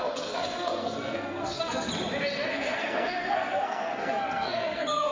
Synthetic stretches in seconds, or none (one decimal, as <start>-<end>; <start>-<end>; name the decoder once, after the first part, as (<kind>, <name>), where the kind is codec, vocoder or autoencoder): 0.0-1.9 (codec, SNAC); 2.5-5.1